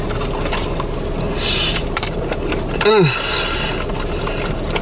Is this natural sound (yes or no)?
yes